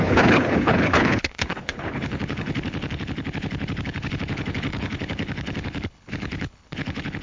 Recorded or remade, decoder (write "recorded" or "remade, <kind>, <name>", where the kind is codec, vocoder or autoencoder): remade, codec, HILCodec